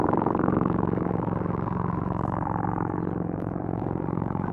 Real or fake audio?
fake